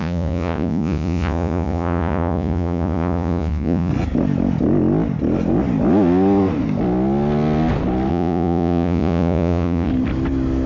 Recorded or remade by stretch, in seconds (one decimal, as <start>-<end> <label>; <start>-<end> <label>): 0.0-3.9 remade; 3.9-8.1 recorded; 8.1-9.9 remade; 9.9-10.7 recorded

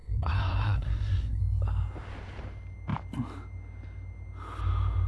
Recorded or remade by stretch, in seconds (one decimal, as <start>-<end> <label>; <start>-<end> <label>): 0.0-1.4 remade; 1.4-5.1 recorded

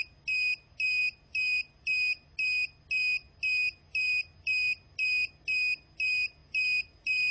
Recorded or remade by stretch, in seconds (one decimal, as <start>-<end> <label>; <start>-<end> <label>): 0.0-7.3 recorded

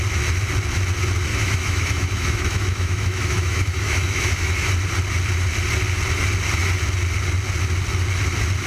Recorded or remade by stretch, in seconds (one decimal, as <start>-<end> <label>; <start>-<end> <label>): 0.0-1.3 recorded; 1.3-4.7 remade; 4.7-8.7 recorded

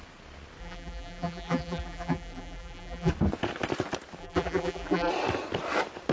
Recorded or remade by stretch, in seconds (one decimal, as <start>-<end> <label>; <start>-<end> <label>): 0.0-0.6 recorded; 0.6-3.1 remade; 3.1-4.2 recorded; 4.2-5.1 remade; 5.1-6.1 recorded